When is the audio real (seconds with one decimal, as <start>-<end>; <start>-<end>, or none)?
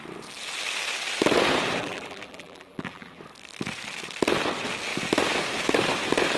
0.0-1.8; 3.2-6.4